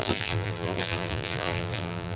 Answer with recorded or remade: remade